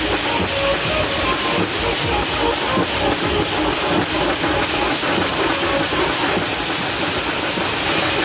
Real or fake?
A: real